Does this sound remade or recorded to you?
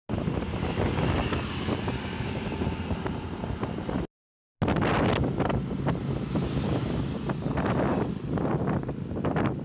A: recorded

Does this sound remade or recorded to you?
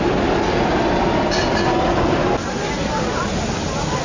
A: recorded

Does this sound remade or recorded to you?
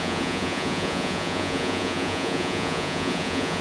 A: remade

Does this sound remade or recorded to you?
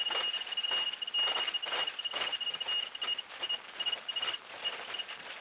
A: recorded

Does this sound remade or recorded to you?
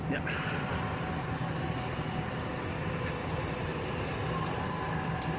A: recorded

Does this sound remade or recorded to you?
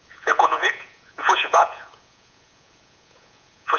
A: remade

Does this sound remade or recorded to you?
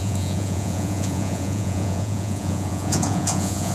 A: remade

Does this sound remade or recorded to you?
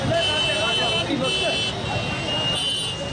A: recorded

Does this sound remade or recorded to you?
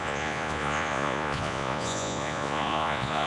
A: remade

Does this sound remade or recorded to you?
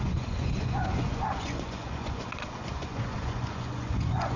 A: remade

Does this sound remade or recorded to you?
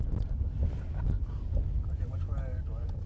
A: recorded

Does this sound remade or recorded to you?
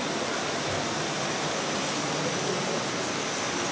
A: recorded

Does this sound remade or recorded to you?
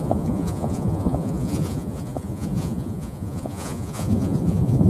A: remade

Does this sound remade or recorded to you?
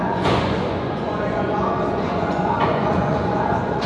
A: remade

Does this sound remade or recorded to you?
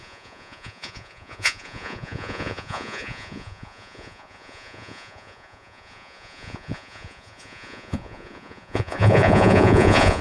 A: remade